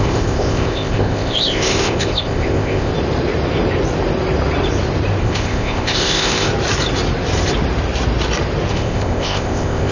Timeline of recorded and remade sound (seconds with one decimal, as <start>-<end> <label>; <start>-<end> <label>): 0.0-2.9 remade; 2.9-5.2 recorded; 5.2-6.5 remade; 6.5-8.7 recorded; 8.7-9.9 remade

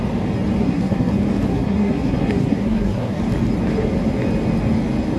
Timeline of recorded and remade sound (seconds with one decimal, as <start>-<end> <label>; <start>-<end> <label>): 0.0-0.6 recorded; 0.6-1.1 remade; 1.1-1.5 recorded; 1.5-3.2 remade; 3.2-5.2 recorded

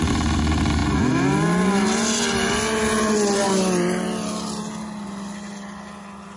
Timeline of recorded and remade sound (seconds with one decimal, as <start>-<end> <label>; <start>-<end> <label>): 0.0-6.4 recorded

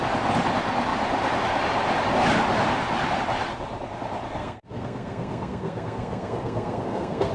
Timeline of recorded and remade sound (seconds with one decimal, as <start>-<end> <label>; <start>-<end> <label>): 0.0-4.4 recorded; 4.4-7.3 remade

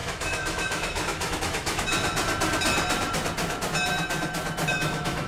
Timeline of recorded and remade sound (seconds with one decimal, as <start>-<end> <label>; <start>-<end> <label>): 0.0-1.9 remade; 1.9-4.7 recorded; 4.7-5.3 remade

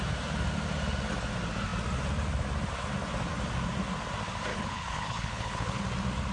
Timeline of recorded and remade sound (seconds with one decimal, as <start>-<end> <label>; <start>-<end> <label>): 0.0-4.5 recorded; 4.5-5.8 remade; 5.8-6.3 recorded

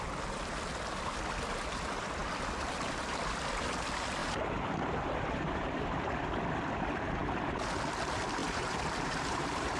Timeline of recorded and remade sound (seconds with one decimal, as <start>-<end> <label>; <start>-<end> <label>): 0.0-4.2 recorded; 4.2-6.2 remade; 6.2-8.4 recorded; 8.4-9.8 remade

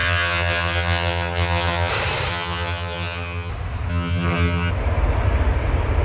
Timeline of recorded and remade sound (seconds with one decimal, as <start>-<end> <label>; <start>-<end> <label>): 0.0-1.9 remade; 1.9-2.3 recorded; 2.3-3.5 remade; 3.5-3.9 recorded; 3.9-4.7 remade; 4.7-6.0 recorded